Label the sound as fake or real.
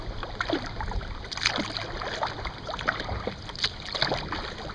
real